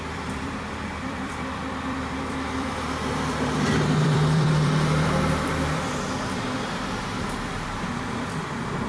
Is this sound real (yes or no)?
no